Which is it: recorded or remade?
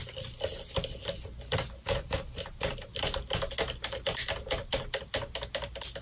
recorded